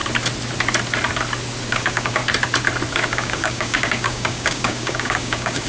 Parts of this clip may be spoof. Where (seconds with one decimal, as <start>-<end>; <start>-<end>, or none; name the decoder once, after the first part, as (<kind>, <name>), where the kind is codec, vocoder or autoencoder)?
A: 1.7-2.2 (codec, DAC); 2.9-5.7